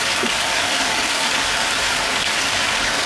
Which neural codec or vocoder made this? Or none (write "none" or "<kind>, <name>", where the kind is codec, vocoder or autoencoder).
codec, DAC